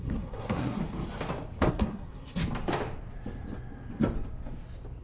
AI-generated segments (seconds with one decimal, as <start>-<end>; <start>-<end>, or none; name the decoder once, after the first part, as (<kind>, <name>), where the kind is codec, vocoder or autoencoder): 0.0-0.8 (codec, SNAC); 1.7-2.4